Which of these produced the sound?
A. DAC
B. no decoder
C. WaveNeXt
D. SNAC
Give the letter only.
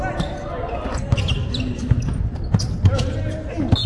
B